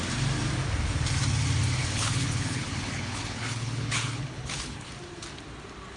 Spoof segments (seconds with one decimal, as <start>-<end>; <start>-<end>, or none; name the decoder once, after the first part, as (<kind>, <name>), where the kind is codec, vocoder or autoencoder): 1.8-4.9 (codec, HILCodec)